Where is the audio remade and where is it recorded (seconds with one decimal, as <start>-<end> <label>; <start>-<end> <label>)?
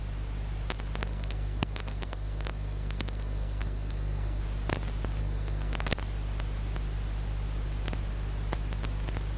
0.0-1.0 recorded; 1.0-4.4 remade; 4.4-5.2 recorded; 5.2-5.9 remade; 5.9-9.4 recorded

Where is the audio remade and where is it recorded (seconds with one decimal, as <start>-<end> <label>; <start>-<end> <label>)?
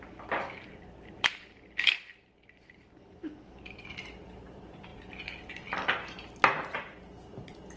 0.0-3.0 recorded; 3.0-3.6 remade; 3.6-7.8 recorded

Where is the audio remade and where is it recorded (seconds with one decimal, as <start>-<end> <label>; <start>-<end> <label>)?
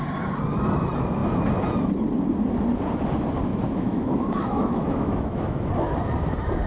0.0-3.5 recorded; 3.5-5.7 remade; 5.7-6.7 recorded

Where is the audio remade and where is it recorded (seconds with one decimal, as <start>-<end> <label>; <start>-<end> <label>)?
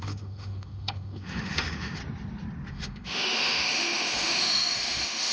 0.0-2.0 remade; 2.0-2.7 recorded; 2.7-5.3 remade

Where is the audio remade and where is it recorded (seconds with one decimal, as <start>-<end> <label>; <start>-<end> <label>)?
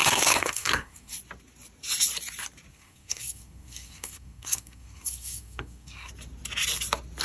0.0-1.1 remade; 1.1-2.7 recorded; 2.7-6.1 remade; 6.1-7.2 recorded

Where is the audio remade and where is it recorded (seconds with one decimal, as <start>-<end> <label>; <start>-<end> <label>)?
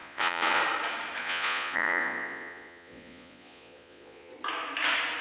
0.0-0.6 remade; 0.6-1.2 recorded; 1.2-4.3 remade; 4.3-5.2 recorded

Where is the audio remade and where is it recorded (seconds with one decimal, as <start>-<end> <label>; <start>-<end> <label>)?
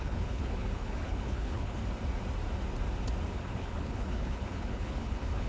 0.0-1.8 remade; 1.8-3.3 recorded; 3.3-5.5 remade